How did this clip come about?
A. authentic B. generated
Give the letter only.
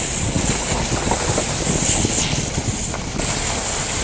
A